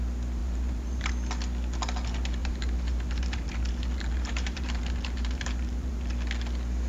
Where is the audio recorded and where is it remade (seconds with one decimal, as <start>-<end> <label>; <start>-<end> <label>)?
0.0-0.4 recorded; 0.4-1.1 remade; 1.1-2.4 recorded; 2.4-6.1 remade; 6.1-6.9 recorded

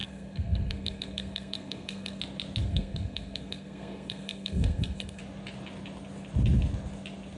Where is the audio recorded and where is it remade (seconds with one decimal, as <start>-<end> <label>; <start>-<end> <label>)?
0.0-2.2 remade; 2.2-2.6 recorded; 2.6-5.2 remade; 5.2-7.4 recorded

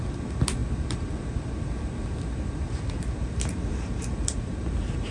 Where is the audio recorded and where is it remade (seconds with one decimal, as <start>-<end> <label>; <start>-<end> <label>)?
0.0-5.1 recorded